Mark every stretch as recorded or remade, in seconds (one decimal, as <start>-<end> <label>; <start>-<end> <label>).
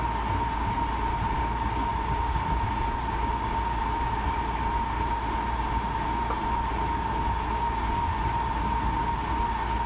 0.0-9.9 recorded